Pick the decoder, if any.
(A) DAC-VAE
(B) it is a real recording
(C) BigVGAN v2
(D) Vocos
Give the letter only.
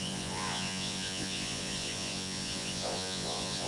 D